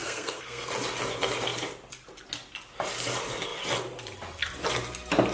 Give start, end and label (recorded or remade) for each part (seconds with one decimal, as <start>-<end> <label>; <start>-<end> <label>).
0.0-0.7 remade; 0.7-5.3 recorded